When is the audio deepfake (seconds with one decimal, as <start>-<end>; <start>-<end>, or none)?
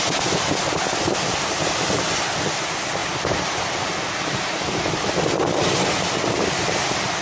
none